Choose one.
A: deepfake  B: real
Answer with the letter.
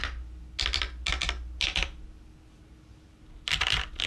B